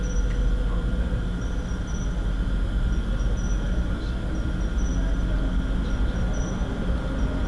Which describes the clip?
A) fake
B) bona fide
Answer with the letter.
B